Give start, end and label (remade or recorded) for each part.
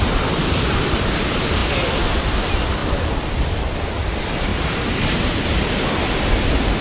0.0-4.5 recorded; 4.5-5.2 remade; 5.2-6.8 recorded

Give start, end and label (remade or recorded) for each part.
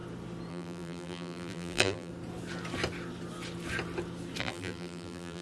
0.0-0.5 recorded; 0.5-2.1 remade; 2.1-4.4 recorded; 4.4-5.4 remade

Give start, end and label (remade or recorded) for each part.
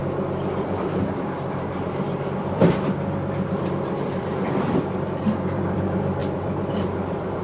0.0-7.4 remade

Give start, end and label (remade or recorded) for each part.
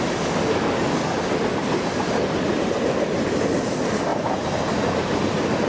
0.0-5.7 recorded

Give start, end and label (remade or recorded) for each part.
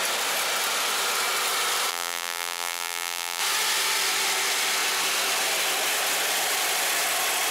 0.0-1.9 recorded; 1.9-3.4 remade; 3.4-7.5 recorded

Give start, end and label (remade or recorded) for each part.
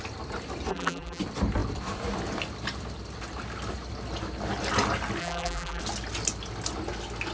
0.0-0.7 recorded; 0.7-1.2 remade; 1.2-5.2 recorded; 5.2-5.8 remade; 5.8-7.3 recorded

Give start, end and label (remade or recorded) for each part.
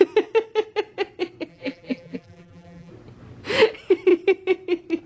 0.0-1.5 recorded; 1.5-2.9 remade; 2.9-5.1 recorded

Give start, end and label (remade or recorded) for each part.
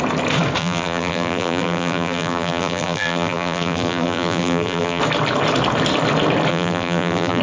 0.0-0.6 recorded; 0.6-5.0 remade; 5.0-6.5 recorded; 6.5-7.4 remade